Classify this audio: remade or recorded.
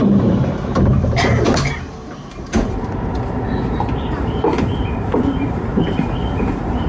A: remade